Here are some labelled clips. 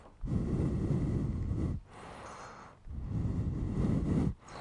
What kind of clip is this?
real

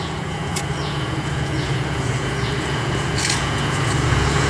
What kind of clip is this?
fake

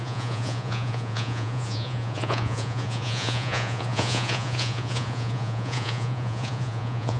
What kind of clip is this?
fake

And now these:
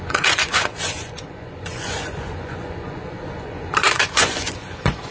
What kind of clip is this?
fake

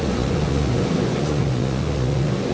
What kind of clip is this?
fake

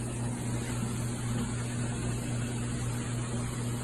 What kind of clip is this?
real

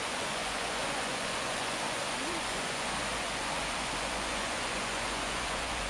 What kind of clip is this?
fake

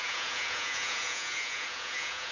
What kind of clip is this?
fake